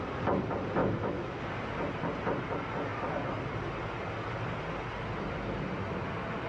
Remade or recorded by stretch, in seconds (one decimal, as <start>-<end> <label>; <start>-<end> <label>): 0.0-0.8 recorded; 0.8-1.4 remade; 1.4-6.5 recorded